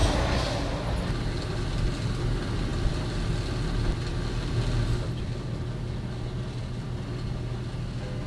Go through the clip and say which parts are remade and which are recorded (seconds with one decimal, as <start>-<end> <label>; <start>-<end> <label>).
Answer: 0.0-8.3 recorded